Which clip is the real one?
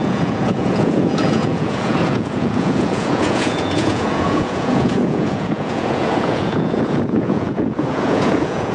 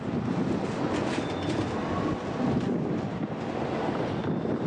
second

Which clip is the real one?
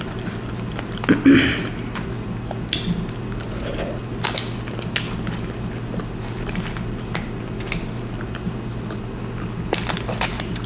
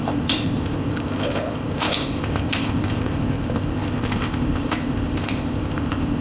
first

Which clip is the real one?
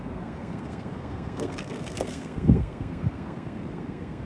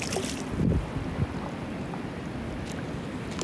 second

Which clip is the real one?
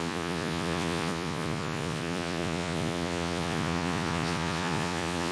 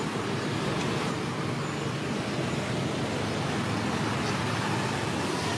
second